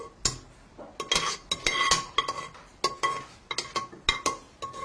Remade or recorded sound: recorded